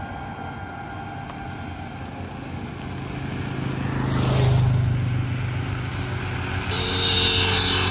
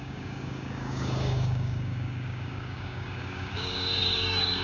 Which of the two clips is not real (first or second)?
second